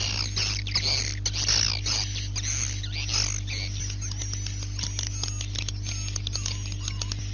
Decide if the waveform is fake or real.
real